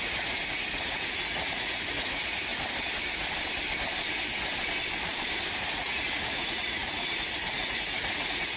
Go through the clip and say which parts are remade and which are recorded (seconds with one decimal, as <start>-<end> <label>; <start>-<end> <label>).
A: 0.0-2.5 remade; 2.5-5.6 recorded; 5.6-8.6 remade